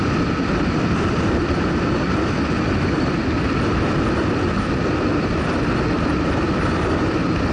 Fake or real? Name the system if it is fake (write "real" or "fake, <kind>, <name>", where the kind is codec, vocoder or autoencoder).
real